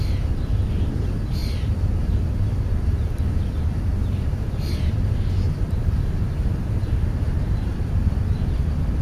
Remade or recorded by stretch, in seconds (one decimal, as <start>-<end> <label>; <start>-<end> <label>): 0.0-1.4 recorded; 1.4-2.5 remade; 2.5-3.9 recorded; 3.9-8.2 remade; 8.2-9.0 recorded